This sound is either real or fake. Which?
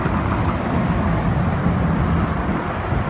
real